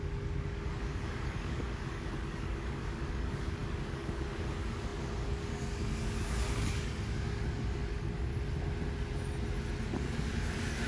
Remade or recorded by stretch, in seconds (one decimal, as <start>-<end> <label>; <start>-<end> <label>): 0.0-8.3 remade; 8.3-9.8 recorded; 9.8-10.9 remade